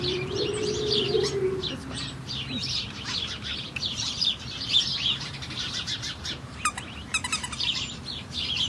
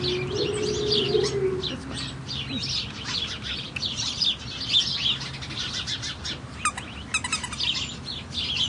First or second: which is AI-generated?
first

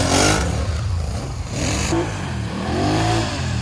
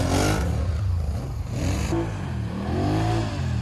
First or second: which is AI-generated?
first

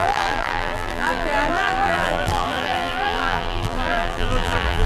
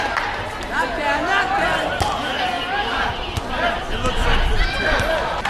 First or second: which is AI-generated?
first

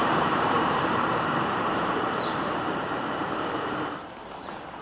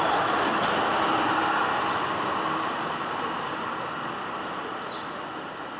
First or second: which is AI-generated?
first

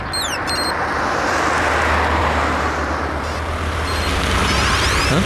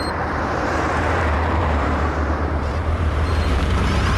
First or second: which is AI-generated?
second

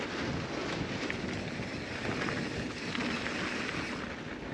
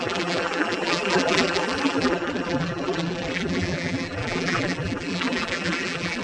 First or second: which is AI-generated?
second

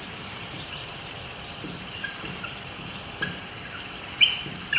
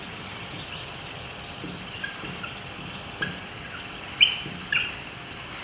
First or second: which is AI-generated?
first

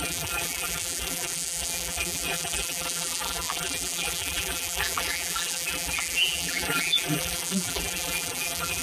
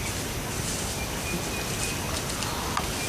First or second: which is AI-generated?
first